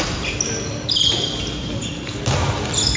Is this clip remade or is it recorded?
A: recorded